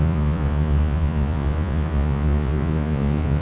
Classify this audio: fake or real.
fake